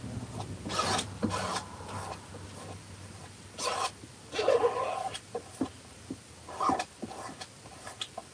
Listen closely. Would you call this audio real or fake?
real